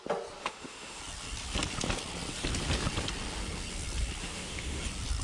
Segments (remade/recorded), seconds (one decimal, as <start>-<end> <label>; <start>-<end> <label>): 0.0-0.4 recorded; 0.4-1.0 remade; 1.0-4.2 recorded; 4.2-4.8 remade; 4.8-5.2 recorded